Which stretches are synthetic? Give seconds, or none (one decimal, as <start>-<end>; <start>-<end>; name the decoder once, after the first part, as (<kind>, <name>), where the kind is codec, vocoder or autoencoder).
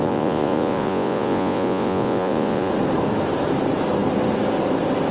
0.0-2.7 (vocoder, Vocos)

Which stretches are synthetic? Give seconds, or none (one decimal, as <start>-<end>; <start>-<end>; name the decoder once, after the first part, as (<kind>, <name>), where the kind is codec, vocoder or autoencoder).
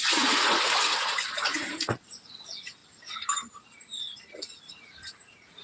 0.0-2.8 (vocoder, Vocos); 4.6-5.6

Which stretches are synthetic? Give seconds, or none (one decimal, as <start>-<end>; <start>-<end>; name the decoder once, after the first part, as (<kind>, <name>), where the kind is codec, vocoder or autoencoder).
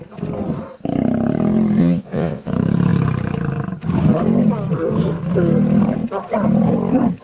1.8-2.5 (vocoder, Vocos)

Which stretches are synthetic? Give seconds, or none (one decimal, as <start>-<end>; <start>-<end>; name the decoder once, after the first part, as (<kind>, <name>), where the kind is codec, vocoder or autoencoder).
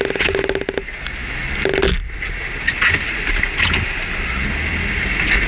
none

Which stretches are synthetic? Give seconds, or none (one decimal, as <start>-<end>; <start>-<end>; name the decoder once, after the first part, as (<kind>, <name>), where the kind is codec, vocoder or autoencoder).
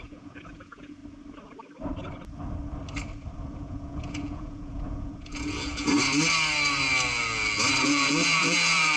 0.0-1.0 (vocoder, Vocos); 3.5-5.9; 7.8-9.0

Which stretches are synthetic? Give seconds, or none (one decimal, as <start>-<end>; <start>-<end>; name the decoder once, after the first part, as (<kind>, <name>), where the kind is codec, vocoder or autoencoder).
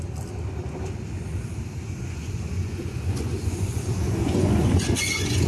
2.0-5.5 (vocoder, Vocos)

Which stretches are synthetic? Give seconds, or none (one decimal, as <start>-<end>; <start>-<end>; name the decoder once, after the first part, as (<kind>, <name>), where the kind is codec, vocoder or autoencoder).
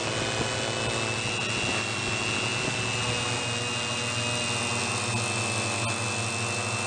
none